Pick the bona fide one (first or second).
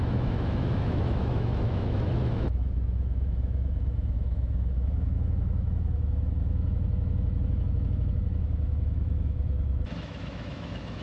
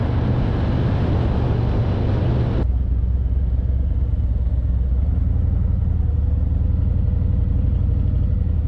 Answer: second